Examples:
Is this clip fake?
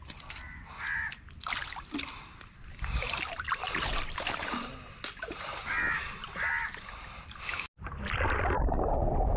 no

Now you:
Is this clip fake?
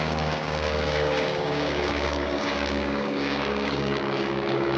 yes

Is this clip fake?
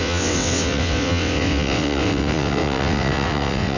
yes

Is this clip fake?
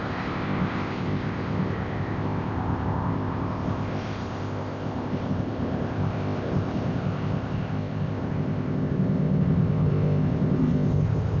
yes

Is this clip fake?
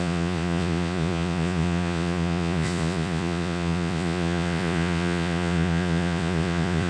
yes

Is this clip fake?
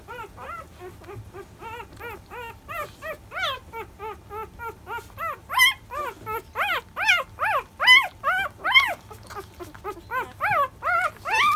no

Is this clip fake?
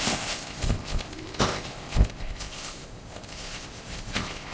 yes